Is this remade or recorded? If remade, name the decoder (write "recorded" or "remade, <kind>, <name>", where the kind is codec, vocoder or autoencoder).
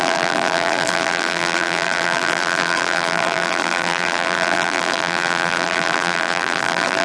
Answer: remade, vocoder, BigVGAN v2